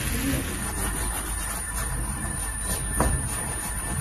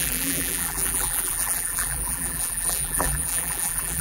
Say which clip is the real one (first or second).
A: first